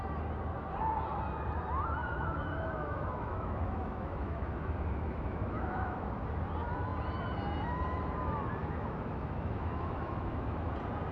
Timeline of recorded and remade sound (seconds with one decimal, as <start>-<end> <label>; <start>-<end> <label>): 0.0-2.0 recorded; 2.0-6.1 remade; 6.1-8.6 recorded; 8.6-10.7 remade; 10.7-11.1 recorded